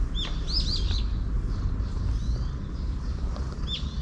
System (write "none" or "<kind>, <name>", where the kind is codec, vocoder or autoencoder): none